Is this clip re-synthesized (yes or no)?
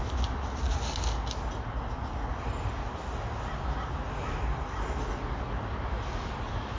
no